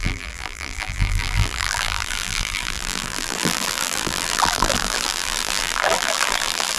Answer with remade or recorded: remade